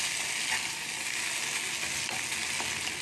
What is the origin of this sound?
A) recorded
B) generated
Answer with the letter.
A